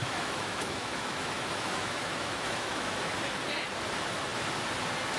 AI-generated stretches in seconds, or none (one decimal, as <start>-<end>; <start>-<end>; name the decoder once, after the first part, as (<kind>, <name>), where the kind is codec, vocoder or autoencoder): 0.0-3.1 (autoencoder, DAC-VAE)